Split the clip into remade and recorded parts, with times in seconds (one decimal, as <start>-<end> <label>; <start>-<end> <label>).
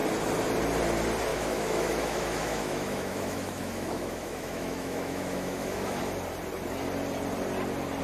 0.0-1.3 recorded; 1.3-6.0 remade; 6.0-8.0 recorded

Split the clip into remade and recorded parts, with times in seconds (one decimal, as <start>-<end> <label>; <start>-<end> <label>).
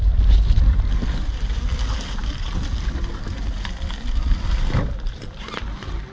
0.0-6.1 recorded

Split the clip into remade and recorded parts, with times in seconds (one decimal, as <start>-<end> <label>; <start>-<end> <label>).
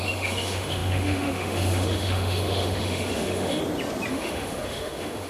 0.0-3.6 remade; 3.6-4.1 recorded; 4.1-5.3 remade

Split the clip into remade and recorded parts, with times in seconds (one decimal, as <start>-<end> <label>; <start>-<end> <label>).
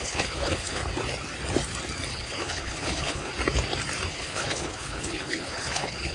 0.0-0.8 remade; 0.8-2.1 recorded; 2.1-3.3 remade; 3.3-4.1 recorded; 4.1-6.1 remade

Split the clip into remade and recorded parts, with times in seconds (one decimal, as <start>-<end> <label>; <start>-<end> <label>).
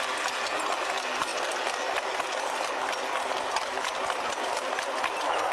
0.0-5.5 recorded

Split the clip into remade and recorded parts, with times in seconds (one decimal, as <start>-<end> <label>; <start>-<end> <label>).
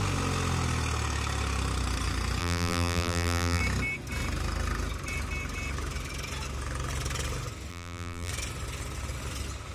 0.0-2.4 recorded; 2.4-3.6 remade; 3.6-7.7 recorded; 7.7-8.3 remade; 8.3-9.7 recorded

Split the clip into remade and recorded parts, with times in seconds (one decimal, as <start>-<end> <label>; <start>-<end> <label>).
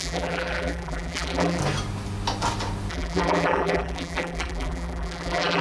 0.0-1.6 remade; 1.6-2.9 recorded; 2.9-5.6 remade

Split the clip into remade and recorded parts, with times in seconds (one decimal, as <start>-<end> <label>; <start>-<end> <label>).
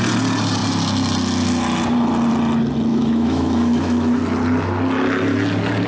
0.0-2.9 recorded; 2.9-4.2 remade; 4.2-5.9 recorded